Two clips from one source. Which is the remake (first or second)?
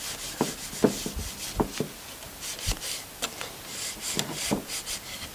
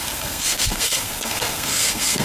second